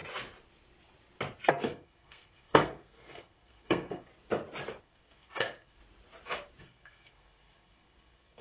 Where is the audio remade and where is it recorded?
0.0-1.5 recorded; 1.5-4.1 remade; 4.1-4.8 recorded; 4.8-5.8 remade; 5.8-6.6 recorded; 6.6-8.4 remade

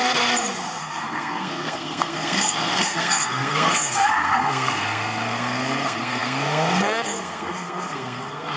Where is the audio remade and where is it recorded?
0.0-0.8 recorded; 0.8-8.6 remade

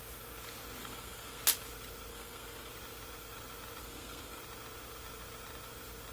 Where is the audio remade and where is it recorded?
0.0-0.8 recorded; 0.8-1.4 remade; 1.4-2.1 recorded; 2.1-2.7 remade; 2.7-3.8 recorded; 3.8-4.4 remade; 4.4-6.1 recorded

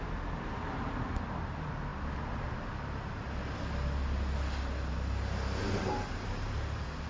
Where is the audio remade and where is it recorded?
0.0-7.1 recorded

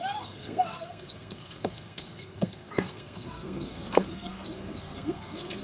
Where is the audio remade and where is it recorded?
0.0-5.6 remade